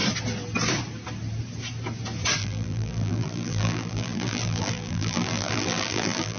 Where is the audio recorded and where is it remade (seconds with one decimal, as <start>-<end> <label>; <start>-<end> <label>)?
0.0-2.4 recorded; 2.4-6.4 remade